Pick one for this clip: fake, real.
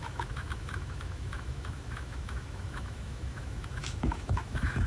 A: fake